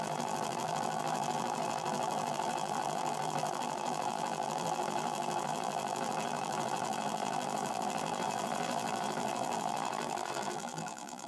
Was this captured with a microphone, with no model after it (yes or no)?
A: no